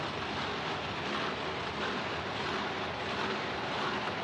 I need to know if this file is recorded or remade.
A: recorded